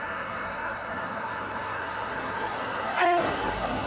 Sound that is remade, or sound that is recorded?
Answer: remade